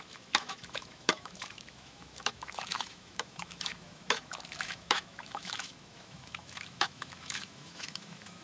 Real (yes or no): no